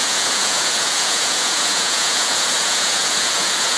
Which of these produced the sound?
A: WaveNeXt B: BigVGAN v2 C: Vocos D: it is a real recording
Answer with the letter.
C